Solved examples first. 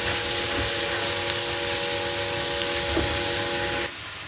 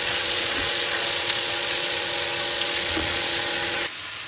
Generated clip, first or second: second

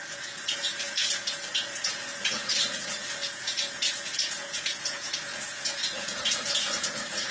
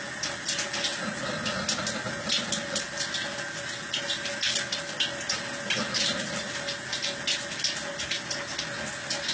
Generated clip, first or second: first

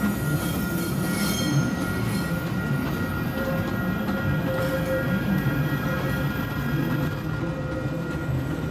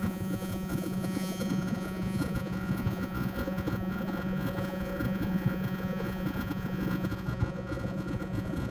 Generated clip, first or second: second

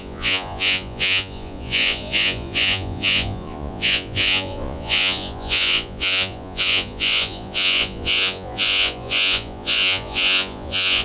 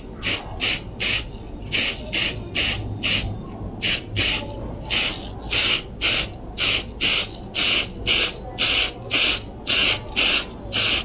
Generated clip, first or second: first